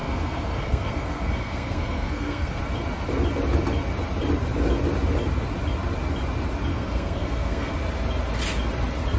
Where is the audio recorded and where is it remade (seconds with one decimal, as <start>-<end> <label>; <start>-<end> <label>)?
0.0-2.6 remade; 2.6-6.7 recorded; 6.7-7.7 remade; 7.7-9.2 recorded